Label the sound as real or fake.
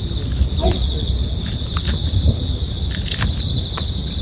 real